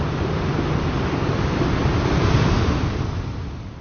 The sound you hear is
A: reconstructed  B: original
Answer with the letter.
B